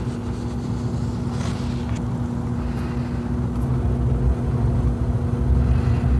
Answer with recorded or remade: recorded